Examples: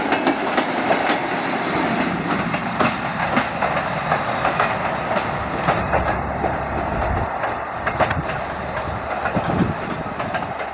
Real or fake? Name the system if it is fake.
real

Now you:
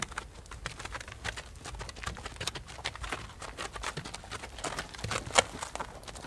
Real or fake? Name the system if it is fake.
real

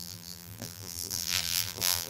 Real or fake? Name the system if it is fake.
fake, vocoder, BigVGAN v2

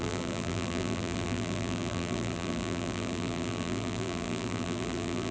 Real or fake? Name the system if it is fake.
fake, vocoder, BigVGAN v2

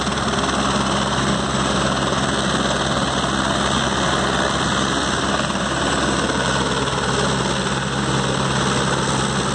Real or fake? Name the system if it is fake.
real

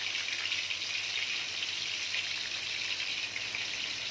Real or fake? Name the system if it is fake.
real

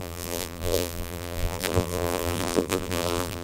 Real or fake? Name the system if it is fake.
fake, vocoder, BigVGAN v2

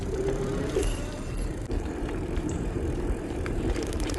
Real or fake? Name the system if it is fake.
fake, vocoder, BigVGAN v2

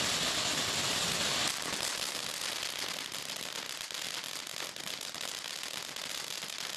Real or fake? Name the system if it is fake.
real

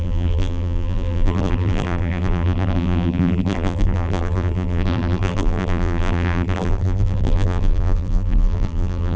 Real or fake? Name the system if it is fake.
fake, vocoder, BigVGAN v2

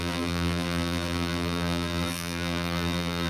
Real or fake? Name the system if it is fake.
fake, vocoder, BigVGAN v2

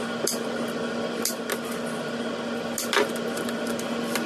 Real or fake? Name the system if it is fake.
real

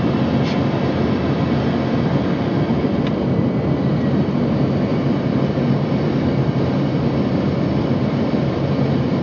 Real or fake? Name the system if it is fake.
real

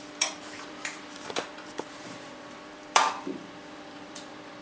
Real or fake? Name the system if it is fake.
fake, vocoder, BigVGAN v2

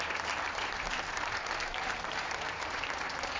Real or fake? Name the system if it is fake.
fake, vocoder, BigVGAN v2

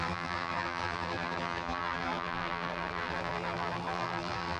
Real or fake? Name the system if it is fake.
fake, vocoder, BigVGAN v2